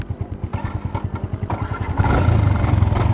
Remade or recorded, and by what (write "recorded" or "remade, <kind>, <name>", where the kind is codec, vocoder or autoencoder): recorded